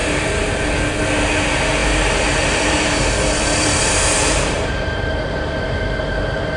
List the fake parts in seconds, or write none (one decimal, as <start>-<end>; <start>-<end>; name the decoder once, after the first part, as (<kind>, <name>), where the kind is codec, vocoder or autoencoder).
0.0-0.5 (vocoder, BigVGAN v2); 1.8-4.7